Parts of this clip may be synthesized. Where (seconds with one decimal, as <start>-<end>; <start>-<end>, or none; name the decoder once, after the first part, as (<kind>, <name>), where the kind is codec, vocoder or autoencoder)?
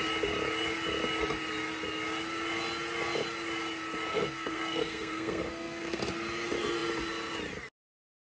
4.1-6.0 (codec, SNAC)